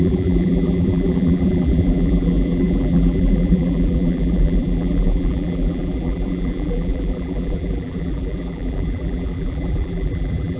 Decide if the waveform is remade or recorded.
remade